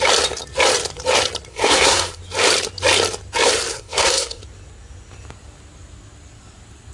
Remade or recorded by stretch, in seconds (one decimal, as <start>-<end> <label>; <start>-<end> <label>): 0.0-1.5 recorded; 1.5-2.2 remade; 2.2-3.7 recorded; 3.7-4.4 remade; 4.4-6.9 recorded